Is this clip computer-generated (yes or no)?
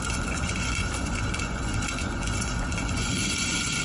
yes